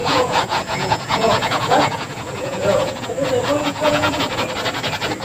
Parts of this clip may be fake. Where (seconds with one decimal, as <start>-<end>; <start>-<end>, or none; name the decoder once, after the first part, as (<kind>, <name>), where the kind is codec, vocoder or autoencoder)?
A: 0.0-3.1 (vocoder, Vocos); 3.5-4.4